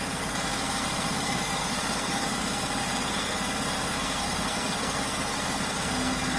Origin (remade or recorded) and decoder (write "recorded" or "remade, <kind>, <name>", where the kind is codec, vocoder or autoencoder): remade, codec, SNAC